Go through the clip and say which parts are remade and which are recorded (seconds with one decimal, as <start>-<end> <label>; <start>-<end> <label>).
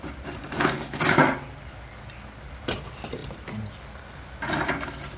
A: 0.0-0.4 recorded; 0.4-1.0 remade; 1.0-5.2 recorded